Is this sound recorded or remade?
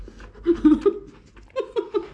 recorded